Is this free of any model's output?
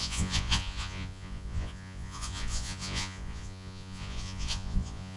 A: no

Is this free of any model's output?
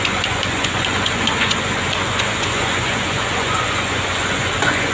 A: no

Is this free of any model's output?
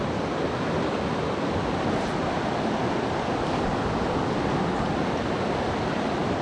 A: yes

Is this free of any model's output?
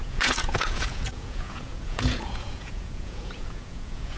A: no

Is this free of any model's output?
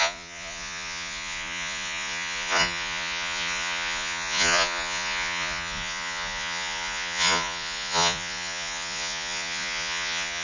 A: no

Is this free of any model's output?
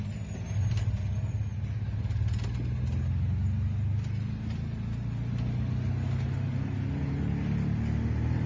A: yes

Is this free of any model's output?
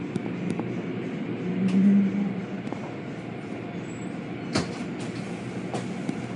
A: yes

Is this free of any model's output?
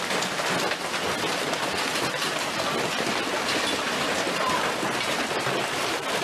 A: yes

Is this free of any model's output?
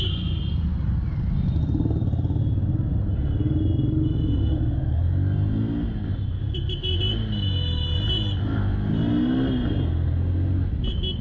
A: yes